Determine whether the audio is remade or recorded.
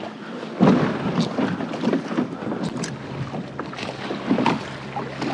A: recorded